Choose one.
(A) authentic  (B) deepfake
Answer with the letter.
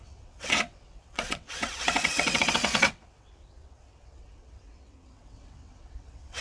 B